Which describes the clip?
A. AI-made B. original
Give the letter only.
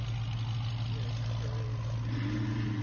B